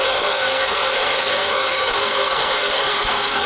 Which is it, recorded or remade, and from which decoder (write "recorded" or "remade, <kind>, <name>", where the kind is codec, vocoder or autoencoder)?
remade, codec, SNAC